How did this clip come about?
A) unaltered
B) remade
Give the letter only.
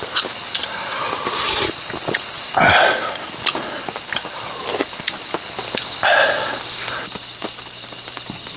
A